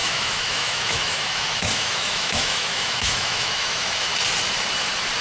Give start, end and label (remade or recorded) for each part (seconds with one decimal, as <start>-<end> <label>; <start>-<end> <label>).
0.0-4.1 remade; 4.1-5.2 recorded

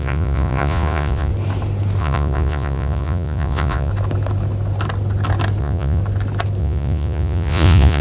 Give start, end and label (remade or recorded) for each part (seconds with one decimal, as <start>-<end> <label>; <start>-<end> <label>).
0.0-1.3 remade; 1.3-2.0 recorded; 2.0-3.9 remade; 3.9-5.6 recorded; 5.6-6.0 remade; 6.0-6.6 recorded; 6.6-8.0 remade

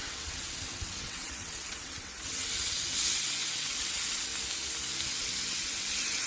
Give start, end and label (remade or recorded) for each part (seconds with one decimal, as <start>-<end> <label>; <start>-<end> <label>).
0.0-4.3 remade; 4.3-5.1 recorded; 5.1-6.3 remade

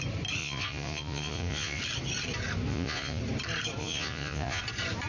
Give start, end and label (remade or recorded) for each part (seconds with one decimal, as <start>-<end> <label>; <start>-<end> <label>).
0.0-0.4 recorded; 0.4-1.8 remade; 1.8-2.7 recorded; 2.7-3.2 remade; 3.2-3.8 recorded; 3.8-4.6 remade; 4.6-5.1 recorded